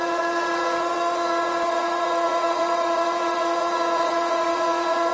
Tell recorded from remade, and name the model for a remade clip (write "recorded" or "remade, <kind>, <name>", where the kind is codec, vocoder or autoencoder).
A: remade, vocoder, Vocos